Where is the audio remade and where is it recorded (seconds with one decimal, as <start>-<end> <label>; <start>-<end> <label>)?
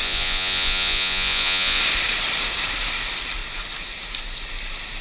0.0-1.8 remade; 1.8-5.0 recorded